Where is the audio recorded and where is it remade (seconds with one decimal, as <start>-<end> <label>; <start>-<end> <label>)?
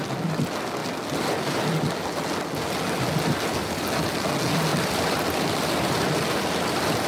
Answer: 0.0-4.7 recorded; 4.7-7.1 remade